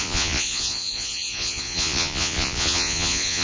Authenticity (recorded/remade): remade